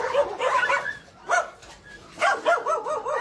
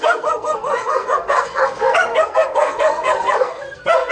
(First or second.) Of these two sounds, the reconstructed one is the second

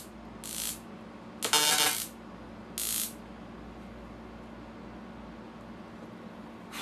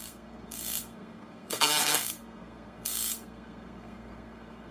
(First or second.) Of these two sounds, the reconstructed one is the second